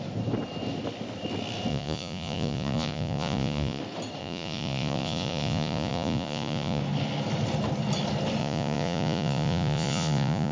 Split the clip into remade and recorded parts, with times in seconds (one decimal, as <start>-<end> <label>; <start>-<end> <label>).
0.0-1.7 recorded; 1.7-3.8 remade; 3.8-4.2 recorded; 4.2-6.8 remade; 6.8-8.4 recorded; 8.4-10.5 remade